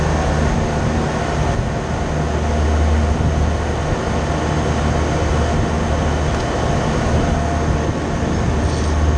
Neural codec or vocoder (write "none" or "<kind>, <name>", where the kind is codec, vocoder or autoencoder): none